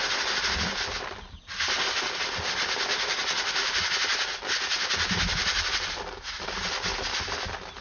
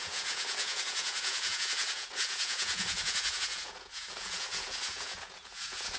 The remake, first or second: second